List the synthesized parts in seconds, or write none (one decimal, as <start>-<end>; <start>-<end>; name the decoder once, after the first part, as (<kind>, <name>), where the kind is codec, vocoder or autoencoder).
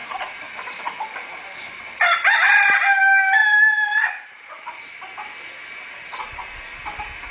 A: 0.0-1.8 (vocoder, BigVGAN v2); 3.4-5.0